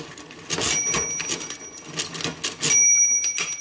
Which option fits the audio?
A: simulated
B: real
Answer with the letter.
B